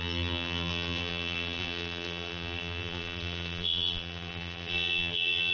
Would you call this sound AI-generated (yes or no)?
yes